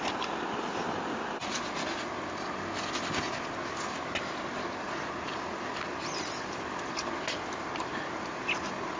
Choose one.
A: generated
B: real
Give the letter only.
B